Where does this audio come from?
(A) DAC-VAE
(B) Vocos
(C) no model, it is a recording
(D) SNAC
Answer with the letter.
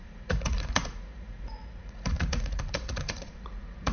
B